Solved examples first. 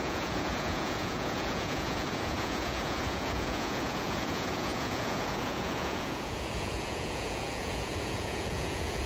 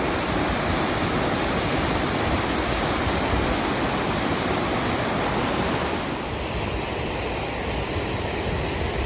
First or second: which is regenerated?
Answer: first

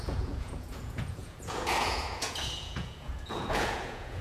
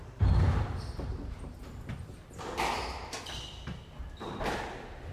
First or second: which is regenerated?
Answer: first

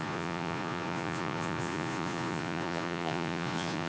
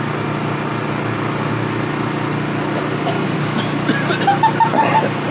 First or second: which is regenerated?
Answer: first